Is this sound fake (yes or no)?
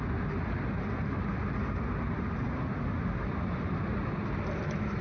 no